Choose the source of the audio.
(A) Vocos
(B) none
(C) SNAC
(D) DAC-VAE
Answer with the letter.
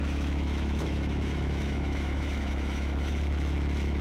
D